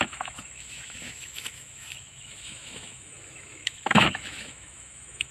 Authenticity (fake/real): fake